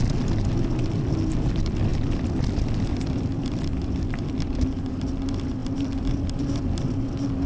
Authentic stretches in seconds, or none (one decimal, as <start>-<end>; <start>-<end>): 0.0-1.9; 4.2-5.6; 6.6-7.5